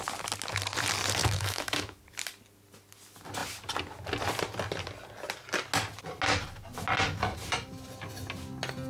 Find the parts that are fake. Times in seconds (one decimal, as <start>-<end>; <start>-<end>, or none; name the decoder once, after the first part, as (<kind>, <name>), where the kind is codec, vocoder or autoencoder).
1.2-2.0 (autoencoder, DAC-VAE)